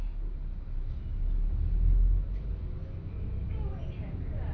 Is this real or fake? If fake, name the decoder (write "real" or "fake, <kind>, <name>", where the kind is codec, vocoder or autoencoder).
real